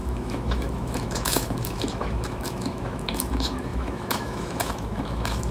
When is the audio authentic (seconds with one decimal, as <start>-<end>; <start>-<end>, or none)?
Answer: none